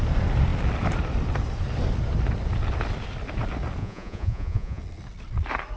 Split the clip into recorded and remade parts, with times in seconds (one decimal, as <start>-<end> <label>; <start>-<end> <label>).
0.0-3.8 recorded; 3.8-4.8 remade; 4.8-5.8 recorded